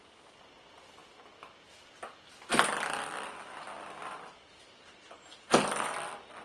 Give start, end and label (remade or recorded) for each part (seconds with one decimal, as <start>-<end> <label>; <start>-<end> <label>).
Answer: 0.0-6.4 recorded